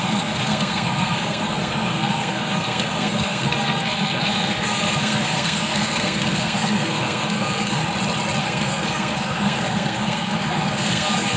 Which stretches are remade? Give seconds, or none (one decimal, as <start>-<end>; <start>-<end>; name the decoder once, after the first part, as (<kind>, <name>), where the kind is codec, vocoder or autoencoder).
0.0-7.8 (codec, SNAC); 8.4-11.4